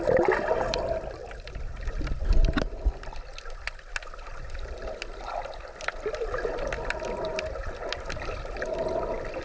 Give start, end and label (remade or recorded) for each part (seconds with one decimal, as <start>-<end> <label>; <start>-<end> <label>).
0.0-9.4 recorded